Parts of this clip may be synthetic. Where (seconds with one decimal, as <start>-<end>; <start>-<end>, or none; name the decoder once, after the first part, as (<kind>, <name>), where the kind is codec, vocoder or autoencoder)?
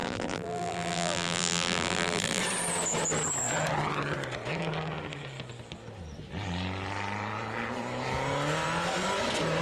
0.0-2.4 (vocoder, BigVGAN v2)